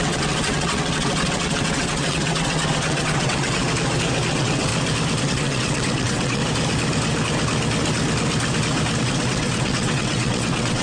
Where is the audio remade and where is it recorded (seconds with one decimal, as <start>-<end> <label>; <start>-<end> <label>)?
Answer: 0.0-3.6 remade; 3.6-4.3 recorded; 4.3-4.7 remade; 4.7-5.2 recorded; 5.2-6.4 remade; 6.4-9.0 recorded; 9.0-10.8 remade